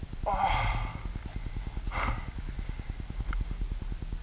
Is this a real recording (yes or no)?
yes